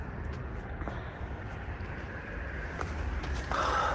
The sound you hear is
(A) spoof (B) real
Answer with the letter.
B